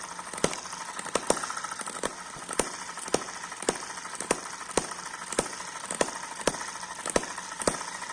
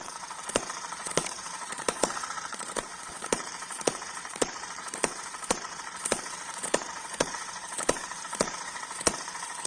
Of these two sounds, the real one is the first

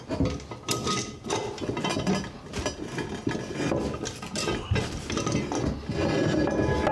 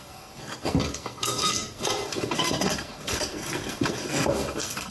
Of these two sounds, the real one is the first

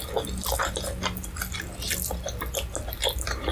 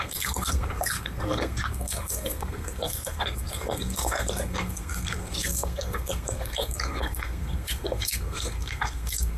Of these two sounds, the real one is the first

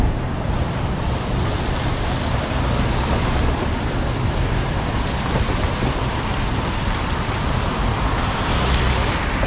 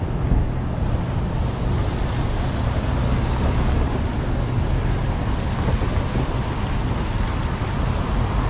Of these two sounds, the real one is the second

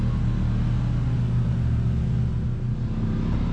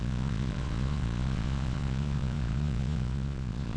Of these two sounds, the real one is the first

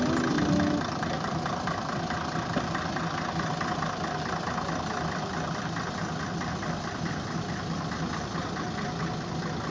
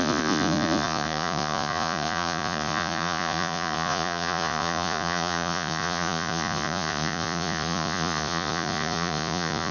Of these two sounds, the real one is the first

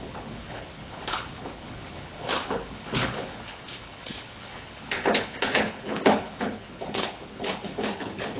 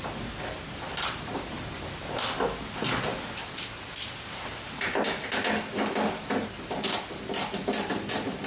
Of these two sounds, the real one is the second